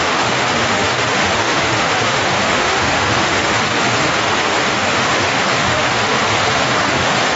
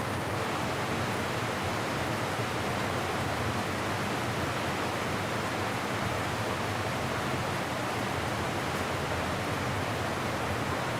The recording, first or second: second